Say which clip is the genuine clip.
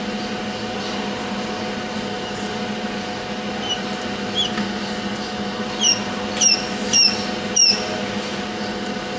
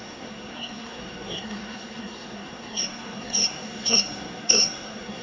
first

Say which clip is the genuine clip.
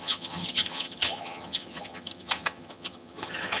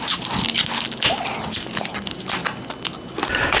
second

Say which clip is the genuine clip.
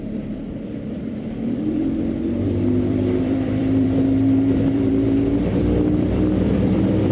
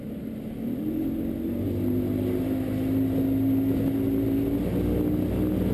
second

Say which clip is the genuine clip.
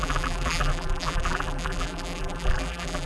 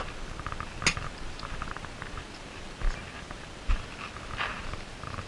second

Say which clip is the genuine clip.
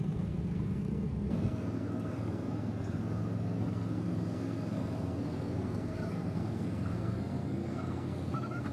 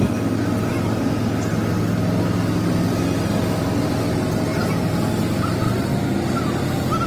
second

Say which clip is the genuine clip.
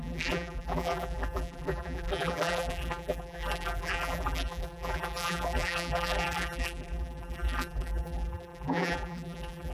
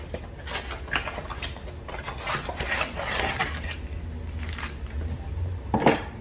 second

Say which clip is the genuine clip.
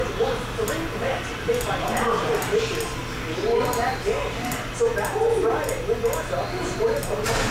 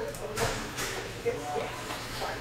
first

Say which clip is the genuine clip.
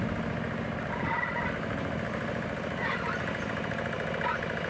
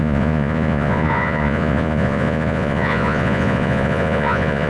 first